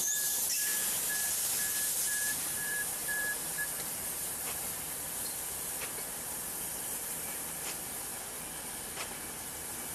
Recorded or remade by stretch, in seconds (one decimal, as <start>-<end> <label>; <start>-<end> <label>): 0.0-0.7 remade; 0.7-2.0 recorded; 2.0-8.1 remade; 8.1-9.4 recorded; 9.4-9.9 remade